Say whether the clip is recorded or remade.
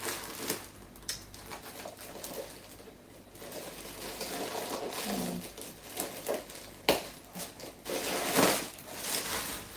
recorded